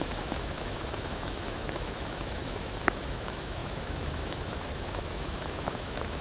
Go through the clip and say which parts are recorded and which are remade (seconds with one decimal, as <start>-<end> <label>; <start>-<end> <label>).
0.0-6.2 remade